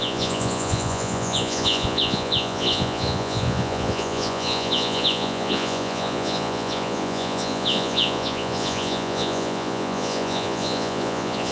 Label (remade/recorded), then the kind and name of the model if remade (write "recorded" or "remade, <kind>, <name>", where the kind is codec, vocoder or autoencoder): remade, vocoder, Vocos